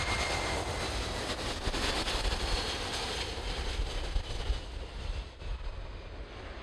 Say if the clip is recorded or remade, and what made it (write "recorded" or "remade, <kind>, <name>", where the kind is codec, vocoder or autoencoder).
recorded